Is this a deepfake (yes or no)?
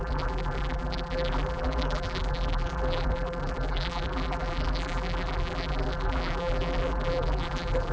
yes